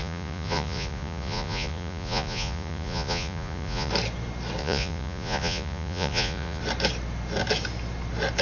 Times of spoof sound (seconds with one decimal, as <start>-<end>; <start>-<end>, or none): 0.0-3.9; 4.6-6.6